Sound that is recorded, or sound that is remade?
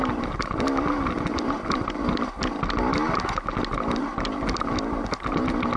recorded